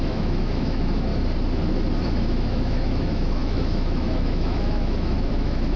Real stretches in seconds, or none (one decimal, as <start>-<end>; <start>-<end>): 1.1-2.0